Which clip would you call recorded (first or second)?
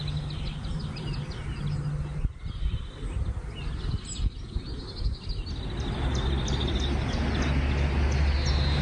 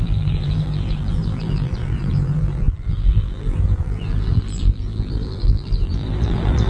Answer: first